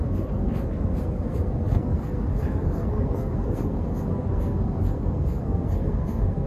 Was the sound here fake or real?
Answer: fake